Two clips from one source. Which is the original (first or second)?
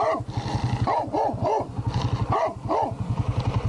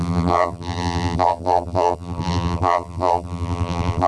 first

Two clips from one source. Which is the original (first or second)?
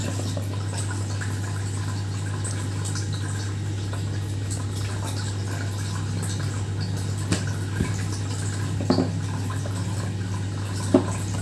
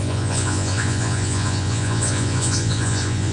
first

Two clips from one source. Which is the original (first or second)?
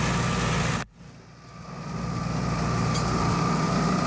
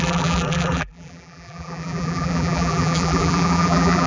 first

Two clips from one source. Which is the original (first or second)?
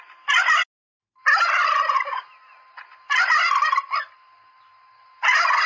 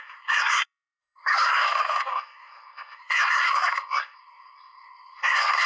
first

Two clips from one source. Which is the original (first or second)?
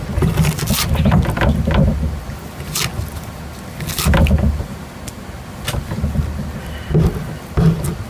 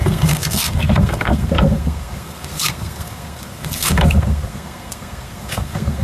first